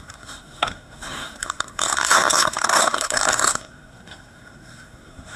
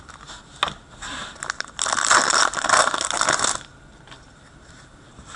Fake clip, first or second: first